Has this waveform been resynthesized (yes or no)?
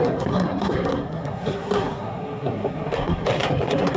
yes